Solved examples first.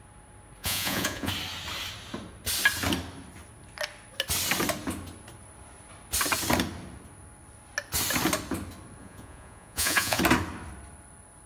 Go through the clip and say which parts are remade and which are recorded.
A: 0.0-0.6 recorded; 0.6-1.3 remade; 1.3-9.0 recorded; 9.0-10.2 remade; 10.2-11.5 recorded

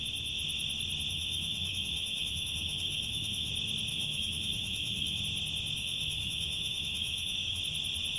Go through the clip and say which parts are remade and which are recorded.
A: 0.0-1.1 recorded; 1.1-3.5 remade; 3.5-3.9 recorded; 3.9-5.2 remade; 5.2-5.8 recorded; 5.8-7.6 remade; 7.6-8.2 recorded